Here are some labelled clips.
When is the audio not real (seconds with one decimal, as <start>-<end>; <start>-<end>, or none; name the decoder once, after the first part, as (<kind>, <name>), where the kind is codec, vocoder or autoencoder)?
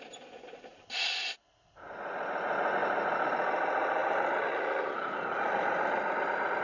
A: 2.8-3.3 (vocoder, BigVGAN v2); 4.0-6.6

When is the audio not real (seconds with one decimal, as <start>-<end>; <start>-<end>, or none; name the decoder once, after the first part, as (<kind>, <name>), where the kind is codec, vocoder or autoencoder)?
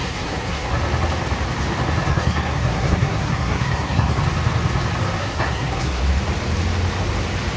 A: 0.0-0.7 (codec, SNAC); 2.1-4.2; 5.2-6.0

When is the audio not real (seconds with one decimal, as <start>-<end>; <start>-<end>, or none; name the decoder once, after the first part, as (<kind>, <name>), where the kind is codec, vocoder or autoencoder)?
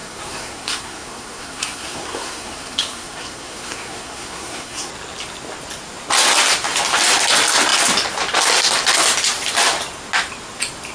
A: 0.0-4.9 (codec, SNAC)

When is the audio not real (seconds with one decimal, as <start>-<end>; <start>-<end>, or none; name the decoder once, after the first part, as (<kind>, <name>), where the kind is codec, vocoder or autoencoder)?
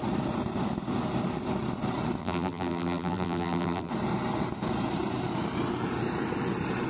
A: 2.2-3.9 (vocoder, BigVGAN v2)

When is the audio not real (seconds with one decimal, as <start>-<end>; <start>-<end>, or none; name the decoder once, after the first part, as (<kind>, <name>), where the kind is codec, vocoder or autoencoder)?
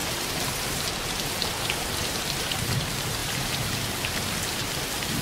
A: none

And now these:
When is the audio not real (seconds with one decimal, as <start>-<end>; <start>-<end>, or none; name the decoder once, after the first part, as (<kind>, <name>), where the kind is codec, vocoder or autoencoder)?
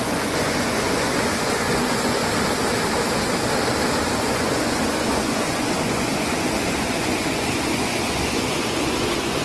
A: 0.0-2.2 (vocoder, Vocos); 4.2-9.4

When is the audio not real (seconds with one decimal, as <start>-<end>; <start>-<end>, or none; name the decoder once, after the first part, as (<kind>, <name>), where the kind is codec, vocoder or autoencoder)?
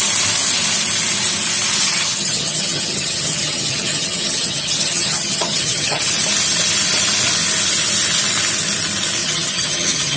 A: 1.8-6.0 (vocoder, HiFi-GAN); 9.2-10.2